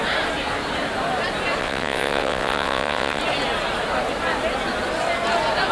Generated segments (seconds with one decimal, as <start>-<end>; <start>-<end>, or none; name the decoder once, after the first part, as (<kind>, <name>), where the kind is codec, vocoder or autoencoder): 1.6-3.2 (vocoder, WaveNeXt)